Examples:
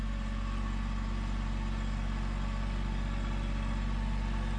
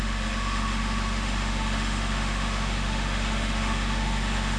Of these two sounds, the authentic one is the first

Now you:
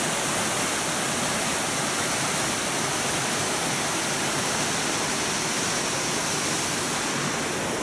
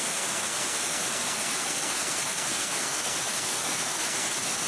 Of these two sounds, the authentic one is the first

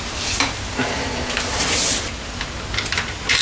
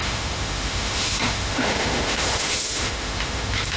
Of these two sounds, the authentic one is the first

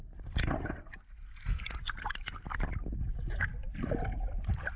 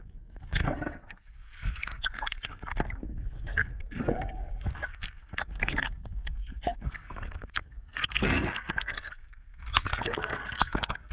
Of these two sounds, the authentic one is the first